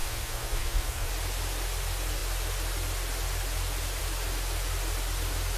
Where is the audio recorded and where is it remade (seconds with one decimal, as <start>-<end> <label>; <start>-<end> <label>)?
0.0-1.1 remade; 1.1-5.6 recorded